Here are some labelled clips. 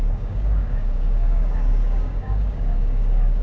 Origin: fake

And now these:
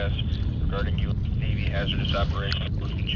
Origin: real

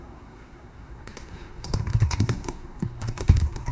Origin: fake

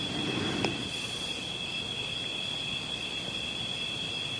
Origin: real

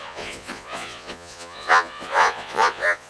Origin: fake